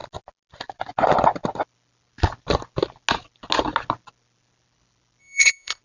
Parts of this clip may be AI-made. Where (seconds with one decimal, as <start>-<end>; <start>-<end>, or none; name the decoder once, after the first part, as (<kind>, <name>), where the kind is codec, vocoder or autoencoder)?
5.2-5.8 (codec, SNAC)